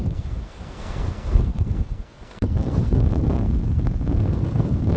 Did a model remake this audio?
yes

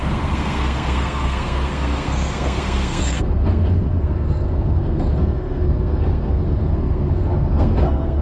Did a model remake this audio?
yes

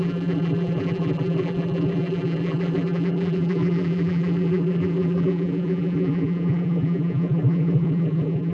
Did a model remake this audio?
yes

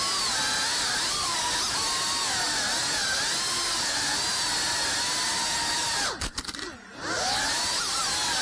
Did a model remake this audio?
no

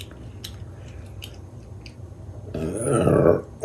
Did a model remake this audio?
no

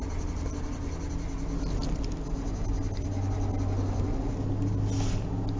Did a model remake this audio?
no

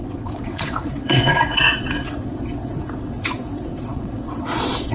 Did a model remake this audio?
yes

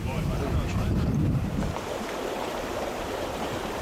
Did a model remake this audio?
yes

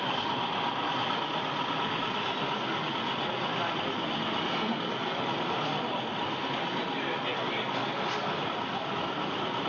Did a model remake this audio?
no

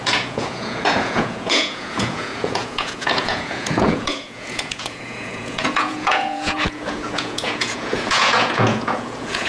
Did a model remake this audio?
yes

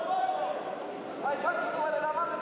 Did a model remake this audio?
no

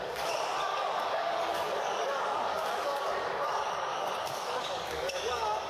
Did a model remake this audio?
yes